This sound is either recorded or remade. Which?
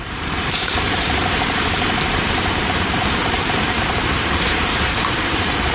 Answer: remade